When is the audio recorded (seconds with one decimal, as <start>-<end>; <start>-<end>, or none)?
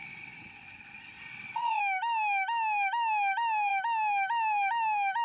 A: 1.8-5.2